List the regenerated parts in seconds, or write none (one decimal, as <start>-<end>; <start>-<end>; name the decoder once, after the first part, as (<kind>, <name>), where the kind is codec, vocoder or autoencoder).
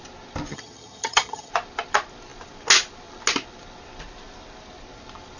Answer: 0.5-1.5 (vocoder, HiFi-GAN)